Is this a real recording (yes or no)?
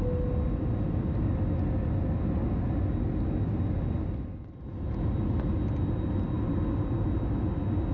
yes